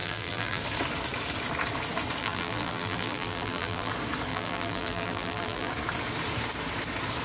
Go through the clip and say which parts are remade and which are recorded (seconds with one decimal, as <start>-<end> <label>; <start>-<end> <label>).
0.0-0.6 remade; 0.6-2.2 recorded; 2.2-3.9 remade; 3.9-4.3 recorded; 4.3-5.7 remade; 5.7-7.2 recorded